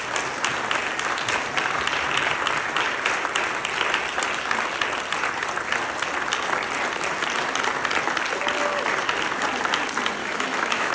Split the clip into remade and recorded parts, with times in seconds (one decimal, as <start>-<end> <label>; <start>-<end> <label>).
0.0-10.2 recorded; 10.2-10.9 remade